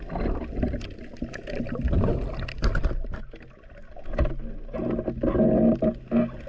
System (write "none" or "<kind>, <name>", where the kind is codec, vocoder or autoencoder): none